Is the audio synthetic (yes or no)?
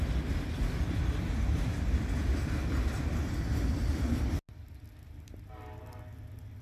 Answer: no